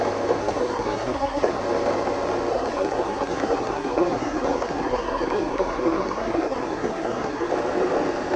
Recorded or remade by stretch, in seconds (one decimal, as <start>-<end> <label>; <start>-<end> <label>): 0.0-0.4 recorded; 0.4-1.6 remade; 1.6-2.5 recorded; 2.5-7.5 remade; 7.5-8.4 recorded